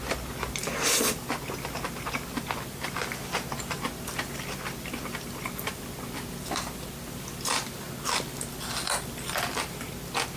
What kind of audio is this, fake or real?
real